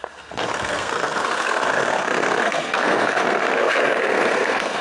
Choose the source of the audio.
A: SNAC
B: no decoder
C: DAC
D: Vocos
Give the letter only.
A